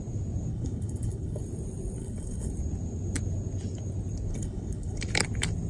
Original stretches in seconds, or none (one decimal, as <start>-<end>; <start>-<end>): 0.0-0.5; 1.4-2.0; 2.5-4.3; 5.0-5.7